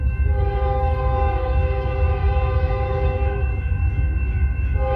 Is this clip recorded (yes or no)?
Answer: no